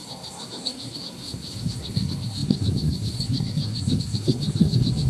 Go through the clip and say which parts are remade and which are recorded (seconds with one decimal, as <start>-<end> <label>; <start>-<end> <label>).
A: 0.0-5.1 remade